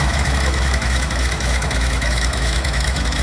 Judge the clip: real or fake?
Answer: fake